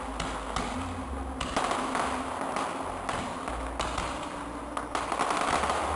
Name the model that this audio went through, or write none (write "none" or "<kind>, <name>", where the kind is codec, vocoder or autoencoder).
none